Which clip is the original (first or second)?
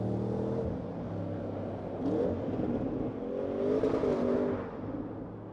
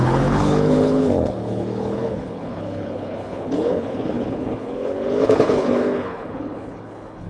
first